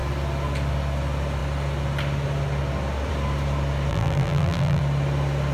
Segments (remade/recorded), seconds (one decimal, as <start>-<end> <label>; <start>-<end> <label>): 0.0-3.9 recorded; 3.9-4.8 remade; 4.8-5.5 recorded